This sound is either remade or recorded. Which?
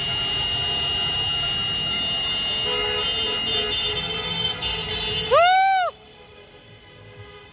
recorded